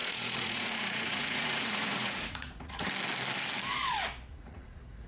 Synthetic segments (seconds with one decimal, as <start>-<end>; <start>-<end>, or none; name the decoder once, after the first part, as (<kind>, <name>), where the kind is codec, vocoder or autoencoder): 0.0-2.9 (vocoder, Vocos); 4.3-5.1